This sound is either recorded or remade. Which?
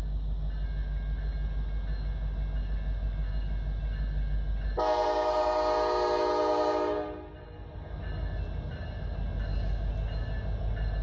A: recorded